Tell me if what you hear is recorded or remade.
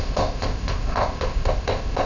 remade